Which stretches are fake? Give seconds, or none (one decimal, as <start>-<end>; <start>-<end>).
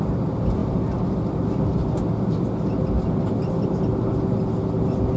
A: none